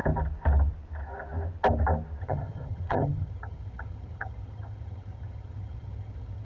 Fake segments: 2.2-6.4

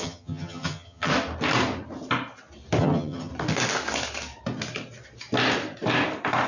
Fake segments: 0.0-1.1; 2.8-3.3